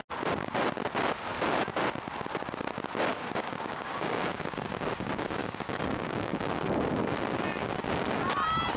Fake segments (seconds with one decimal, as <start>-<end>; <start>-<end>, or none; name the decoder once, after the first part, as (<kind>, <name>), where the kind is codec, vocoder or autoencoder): 3.1-4.7 (codec, DAC); 5.4-6.5